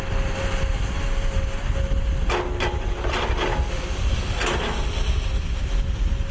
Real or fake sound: real